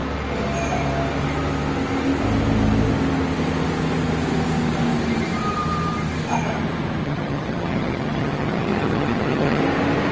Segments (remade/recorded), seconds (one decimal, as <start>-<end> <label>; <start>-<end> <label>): 0.0-7.0 recorded; 7.0-9.6 remade; 9.6-10.1 recorded